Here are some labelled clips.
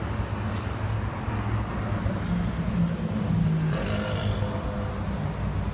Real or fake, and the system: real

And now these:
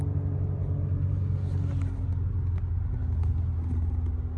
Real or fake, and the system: real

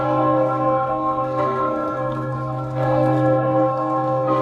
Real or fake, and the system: fake, codec, SNAC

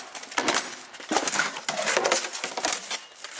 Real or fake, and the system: real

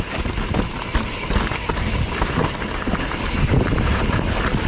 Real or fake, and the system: real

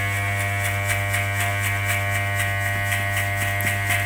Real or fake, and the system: real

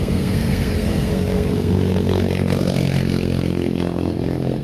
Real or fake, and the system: fake, codec, SNAC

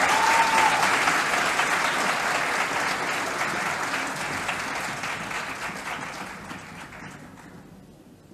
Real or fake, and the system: real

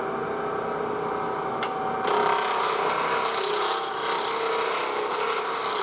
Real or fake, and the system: real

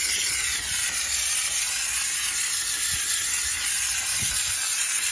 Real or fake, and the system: real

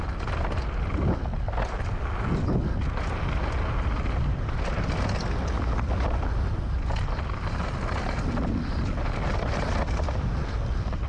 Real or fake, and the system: real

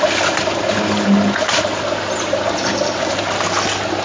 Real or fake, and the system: real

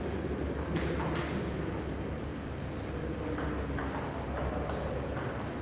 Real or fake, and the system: real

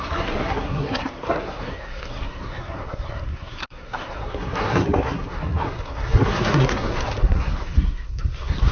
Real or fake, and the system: fake, codec, SNAC